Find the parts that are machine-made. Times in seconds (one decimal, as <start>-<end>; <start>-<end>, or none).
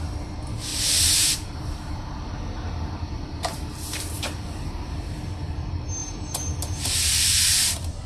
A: 0.7-5.2; 6.0-7.3